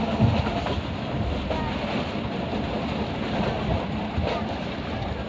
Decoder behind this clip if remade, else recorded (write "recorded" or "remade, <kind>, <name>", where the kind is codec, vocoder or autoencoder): recorded